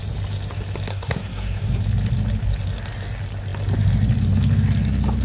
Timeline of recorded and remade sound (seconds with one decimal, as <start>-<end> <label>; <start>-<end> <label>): 0.0-0.9 recorded; 0.9-1.8 remade; 1.8-5.2 recorded

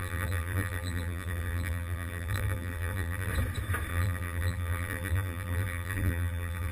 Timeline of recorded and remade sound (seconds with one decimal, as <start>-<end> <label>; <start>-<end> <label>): 0.0-3.3 remade; 3.3-3.9 recorded; 3.9-6.7 remade

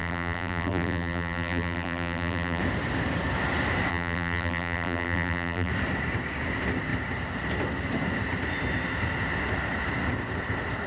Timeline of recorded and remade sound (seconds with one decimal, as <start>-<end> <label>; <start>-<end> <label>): 0.0-2.6 remade; 2.6-3.9 recorded; 3.9-5.7 remade; 5.7-10.9 recorded

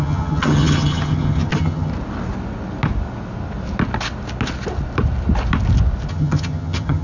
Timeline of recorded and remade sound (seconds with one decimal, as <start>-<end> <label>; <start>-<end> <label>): 0.0-1.9 remade; 1.9-6.1 recorded; 6.1-7.0 remade

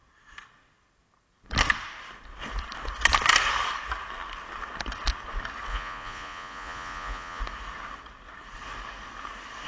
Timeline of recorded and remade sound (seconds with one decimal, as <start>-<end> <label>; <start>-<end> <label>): 0.0-5.7 recorded; 5.7-7.4 remade; 7.4-9.7 recorded

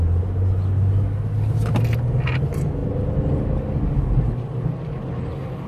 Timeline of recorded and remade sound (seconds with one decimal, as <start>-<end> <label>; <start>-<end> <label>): 0.0-5.7 recorded

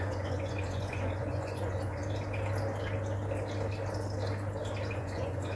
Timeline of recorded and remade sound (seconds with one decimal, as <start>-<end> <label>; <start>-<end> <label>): 0.0-2.0 remade; 2.0-4.9 recorded; 4.9-5.6 remade

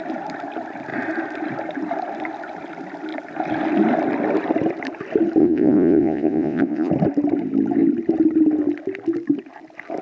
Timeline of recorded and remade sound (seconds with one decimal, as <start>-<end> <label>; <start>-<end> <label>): 0.0-5.4 recorded; 5.4-6.9 remade; 6.9-10.0 recorded